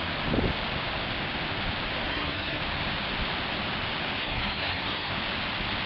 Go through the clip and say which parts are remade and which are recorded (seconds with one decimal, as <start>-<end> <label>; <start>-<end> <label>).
0.0-2.1 recorded; 2.1-2.6 remade; 2.6-4.2 recorded; 4.2-5.1 remade; 5.1-5.9 recorded